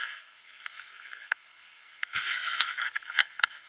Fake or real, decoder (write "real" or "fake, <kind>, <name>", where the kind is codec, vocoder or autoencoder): fake, codec, SNAC